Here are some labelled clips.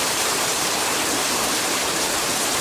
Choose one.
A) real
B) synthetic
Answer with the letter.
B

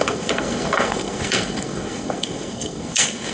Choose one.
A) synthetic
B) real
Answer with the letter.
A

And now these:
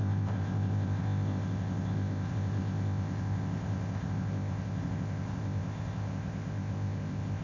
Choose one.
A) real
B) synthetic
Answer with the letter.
B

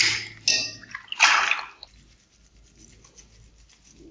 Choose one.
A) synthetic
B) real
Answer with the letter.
B